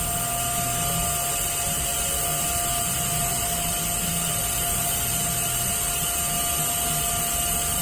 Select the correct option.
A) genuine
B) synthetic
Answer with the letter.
A